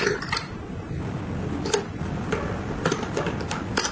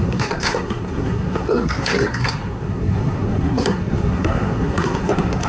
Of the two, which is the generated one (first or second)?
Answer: second